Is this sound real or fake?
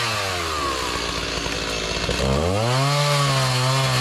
real